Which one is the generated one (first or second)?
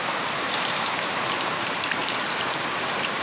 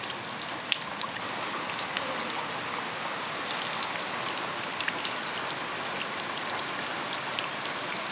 first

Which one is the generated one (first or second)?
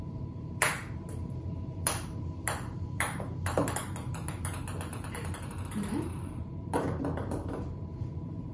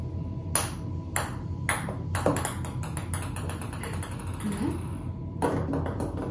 first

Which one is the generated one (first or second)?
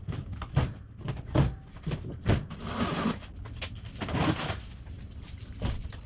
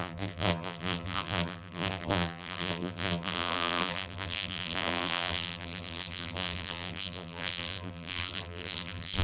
second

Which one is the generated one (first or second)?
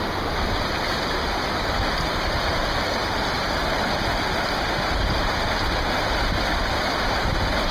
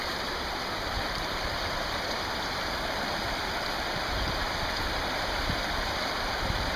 second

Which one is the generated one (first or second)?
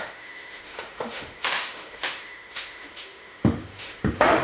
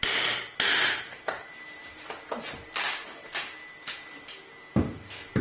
first